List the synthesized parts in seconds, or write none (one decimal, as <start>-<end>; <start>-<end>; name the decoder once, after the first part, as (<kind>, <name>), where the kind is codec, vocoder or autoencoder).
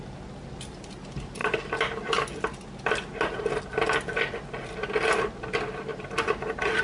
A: none